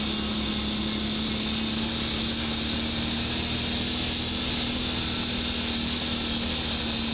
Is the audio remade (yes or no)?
no